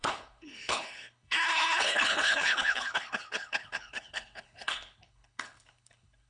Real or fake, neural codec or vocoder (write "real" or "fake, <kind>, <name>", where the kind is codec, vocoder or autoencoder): fake, codec, HILCodec